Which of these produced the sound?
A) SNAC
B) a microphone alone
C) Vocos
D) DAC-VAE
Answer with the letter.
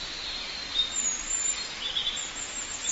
B